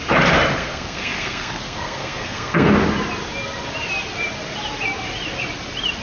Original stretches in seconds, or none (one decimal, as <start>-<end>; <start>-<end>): 0.0-0.6; 2.7-6.0